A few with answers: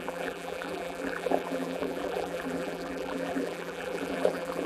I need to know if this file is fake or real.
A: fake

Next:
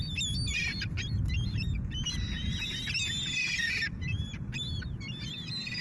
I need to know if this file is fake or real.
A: real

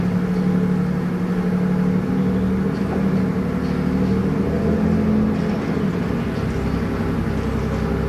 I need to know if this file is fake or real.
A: real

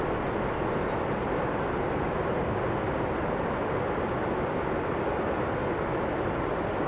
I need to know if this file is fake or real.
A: real